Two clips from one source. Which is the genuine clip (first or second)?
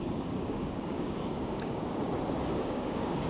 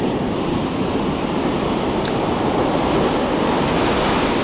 second